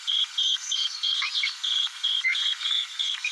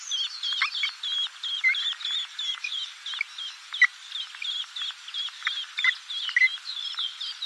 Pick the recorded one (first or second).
second